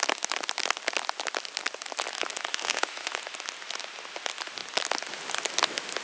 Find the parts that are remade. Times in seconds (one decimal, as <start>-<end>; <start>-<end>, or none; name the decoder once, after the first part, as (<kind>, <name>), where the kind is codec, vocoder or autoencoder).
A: 2.5-3.2 (autoencoder, DAC-VAE)